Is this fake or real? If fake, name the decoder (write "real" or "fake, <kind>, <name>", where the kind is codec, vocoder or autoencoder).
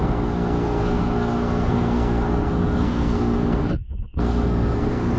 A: fake, codec, SNAC